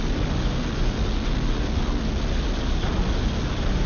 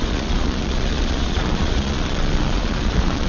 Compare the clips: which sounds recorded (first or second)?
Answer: first